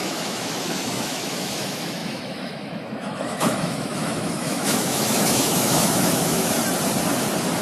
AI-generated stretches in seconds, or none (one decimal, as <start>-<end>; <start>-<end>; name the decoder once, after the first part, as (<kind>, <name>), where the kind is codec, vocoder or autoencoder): 0.0-6.6 (autoencoder, DAC-VAE)